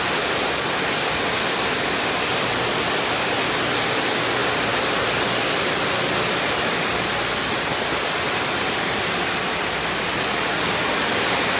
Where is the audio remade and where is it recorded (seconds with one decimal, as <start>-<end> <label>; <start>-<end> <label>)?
0.0-11.6 recorded